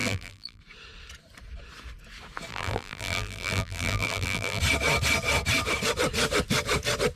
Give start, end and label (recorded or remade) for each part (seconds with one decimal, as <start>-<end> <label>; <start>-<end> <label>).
0.0-0.6 remade; 0.6-2.5 recorded; 2.5-4.6 remade; 4.6-7.2 recorded